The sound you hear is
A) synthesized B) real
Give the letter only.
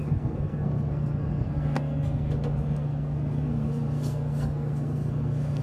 A